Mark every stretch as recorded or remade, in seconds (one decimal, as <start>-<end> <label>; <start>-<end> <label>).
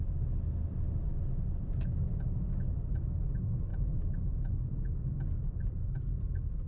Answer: 0.0-3.7 recorded; 3.7-4.2 remade; 4.2-6.7 recorded